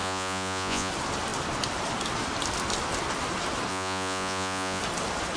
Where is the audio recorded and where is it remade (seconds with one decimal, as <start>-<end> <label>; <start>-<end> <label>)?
0.0-0.9 remade; 0.9-3.7 recorded; 3.7-4.8 remade; 4.8-5.4 recorded